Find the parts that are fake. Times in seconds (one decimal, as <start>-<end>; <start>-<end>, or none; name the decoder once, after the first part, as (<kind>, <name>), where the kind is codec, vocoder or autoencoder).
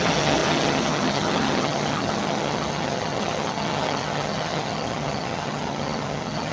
0.0-6.5 (vocoder, HiFi-GAN)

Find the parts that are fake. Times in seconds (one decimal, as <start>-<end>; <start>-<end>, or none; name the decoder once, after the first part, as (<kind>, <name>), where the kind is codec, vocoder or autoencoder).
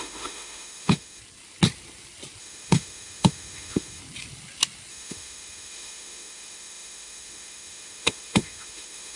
0.0-1.2 (autoencoder, DAC-VAE); 2.4-4.0; 4.9-9.2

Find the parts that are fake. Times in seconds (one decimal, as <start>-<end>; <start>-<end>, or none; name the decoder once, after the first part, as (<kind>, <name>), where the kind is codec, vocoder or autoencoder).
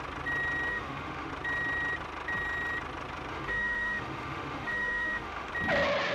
0.7-1.3 (autoencoder, DAC-VAE); 3.3-5.5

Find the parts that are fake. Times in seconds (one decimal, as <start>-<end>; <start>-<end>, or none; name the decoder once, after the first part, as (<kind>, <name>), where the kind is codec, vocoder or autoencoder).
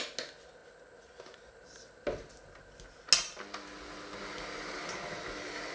none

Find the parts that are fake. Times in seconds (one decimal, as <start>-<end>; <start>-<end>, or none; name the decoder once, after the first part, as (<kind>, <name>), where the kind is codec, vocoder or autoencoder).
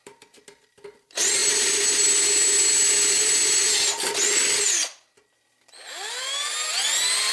none